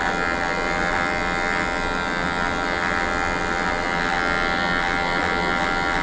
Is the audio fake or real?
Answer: real